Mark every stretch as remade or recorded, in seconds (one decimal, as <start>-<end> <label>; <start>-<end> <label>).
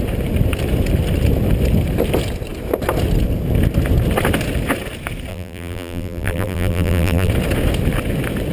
0.0-5.3 recorded; 5.3-7.3 remade; 7.3-8.5 recorded